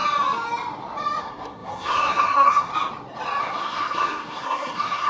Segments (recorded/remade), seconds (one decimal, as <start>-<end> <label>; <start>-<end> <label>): 0.0-1.2 recorded; 1.2-2.7 remade; 2.7-3.4 recorded; 3.4-5.1 remade